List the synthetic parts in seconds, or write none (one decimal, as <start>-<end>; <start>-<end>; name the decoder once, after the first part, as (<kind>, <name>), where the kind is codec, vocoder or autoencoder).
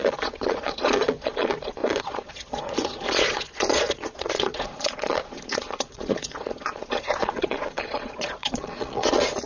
0.0-9.5 (vocoder, Vocos)